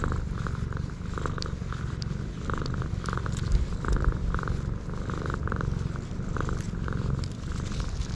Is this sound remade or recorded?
recorded